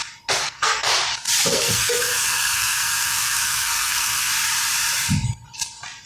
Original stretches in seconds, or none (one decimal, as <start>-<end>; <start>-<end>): 0.0-0.4; 0.9-1.5; 4.3-6.1